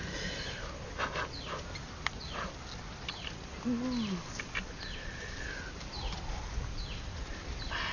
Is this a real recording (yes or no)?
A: yes